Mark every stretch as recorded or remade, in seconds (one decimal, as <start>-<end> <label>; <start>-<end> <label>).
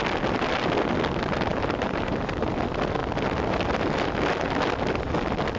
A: 0.0-1.5 recorded; 1.5-2.5 remade; 2.5-5.6 recorded